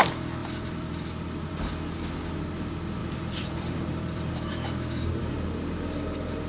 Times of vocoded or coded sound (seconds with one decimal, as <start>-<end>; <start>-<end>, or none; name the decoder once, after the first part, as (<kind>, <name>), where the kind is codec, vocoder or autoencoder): 0.4-1.5 (vocoder, BigVGAN v2); 3.0-4.3